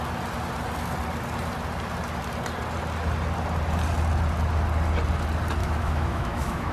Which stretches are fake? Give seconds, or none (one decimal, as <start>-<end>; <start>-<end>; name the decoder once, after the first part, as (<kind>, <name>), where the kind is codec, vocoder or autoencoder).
5.6-6.7 (autoencoder, DAC-VAE)